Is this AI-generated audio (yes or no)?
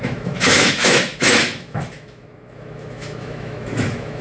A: yes